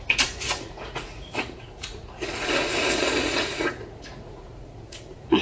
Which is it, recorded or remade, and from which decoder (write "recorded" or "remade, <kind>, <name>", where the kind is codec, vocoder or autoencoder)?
remade, vocoder, Vocos